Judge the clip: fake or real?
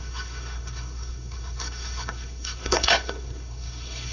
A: fake